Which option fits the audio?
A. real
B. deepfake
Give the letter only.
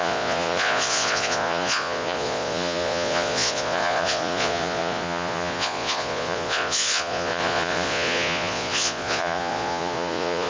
B